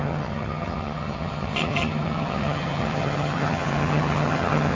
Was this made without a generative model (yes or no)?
no